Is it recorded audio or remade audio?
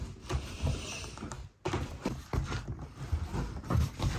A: recorded